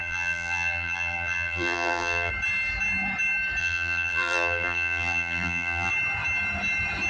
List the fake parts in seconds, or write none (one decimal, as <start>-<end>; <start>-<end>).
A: 0.0-2.3; 3.6-5.9